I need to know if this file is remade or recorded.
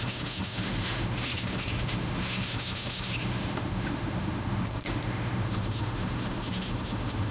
remade